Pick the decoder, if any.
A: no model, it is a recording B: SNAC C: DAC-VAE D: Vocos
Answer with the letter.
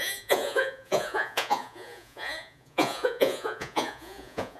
D